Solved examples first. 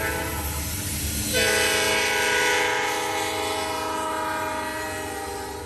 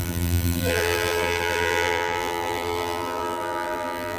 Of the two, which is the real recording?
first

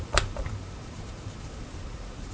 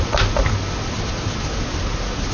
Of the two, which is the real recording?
second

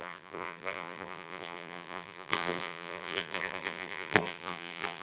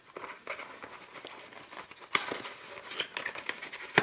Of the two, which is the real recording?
second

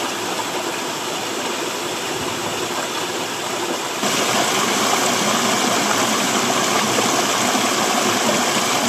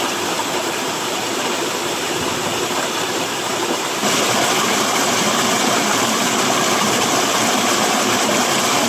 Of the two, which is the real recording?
first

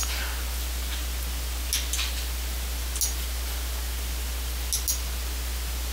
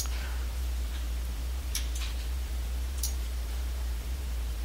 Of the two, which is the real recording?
first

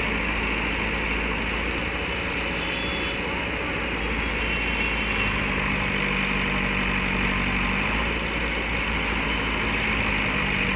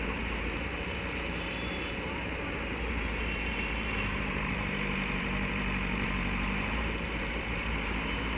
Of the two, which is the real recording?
first